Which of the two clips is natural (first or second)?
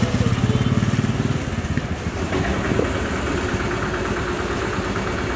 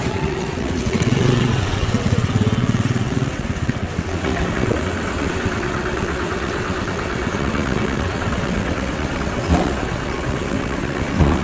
first